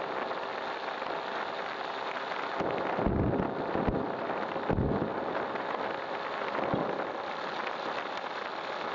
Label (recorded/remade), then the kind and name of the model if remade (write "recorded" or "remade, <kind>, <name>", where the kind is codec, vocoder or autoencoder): recorded